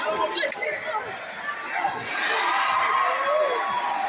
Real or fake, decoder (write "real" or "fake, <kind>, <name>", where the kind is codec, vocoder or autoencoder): real